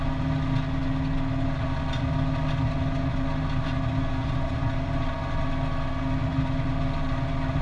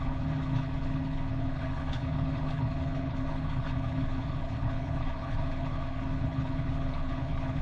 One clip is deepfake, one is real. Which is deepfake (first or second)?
second